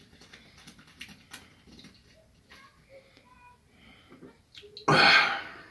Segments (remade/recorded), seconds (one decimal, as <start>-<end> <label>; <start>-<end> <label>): 0.0-5.7 recorded